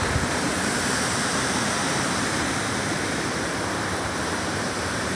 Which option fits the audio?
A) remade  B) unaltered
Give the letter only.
A